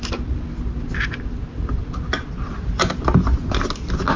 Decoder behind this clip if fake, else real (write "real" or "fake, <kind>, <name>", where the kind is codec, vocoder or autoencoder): real